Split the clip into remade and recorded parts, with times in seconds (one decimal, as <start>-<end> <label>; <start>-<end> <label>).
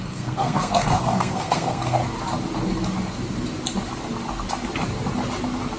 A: 0.0-2.0 remade; 2.0-5.8 recorded